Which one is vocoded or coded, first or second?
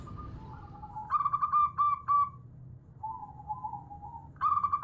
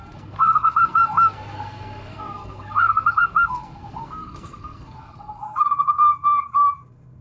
second